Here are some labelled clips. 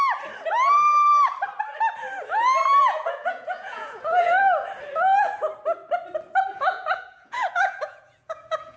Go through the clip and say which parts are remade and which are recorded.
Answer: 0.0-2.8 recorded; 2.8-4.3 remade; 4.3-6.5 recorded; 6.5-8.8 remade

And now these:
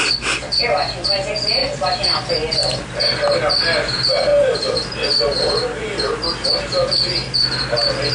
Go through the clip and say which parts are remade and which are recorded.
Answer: 0.0-1.6 recorded; 1.6-2.3 remade; 2.3-8.1 recorded

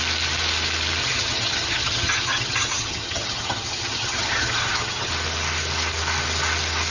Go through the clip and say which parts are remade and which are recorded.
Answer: 0.0-1.0 recorded; 1.0-5.1 remade; 5.1-6.9 recorded

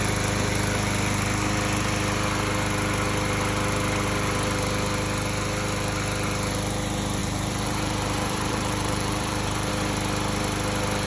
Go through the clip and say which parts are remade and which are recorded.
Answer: 0.0-7.2 recorded; 7.2-9.7 remade; 9.7-11.1 recorded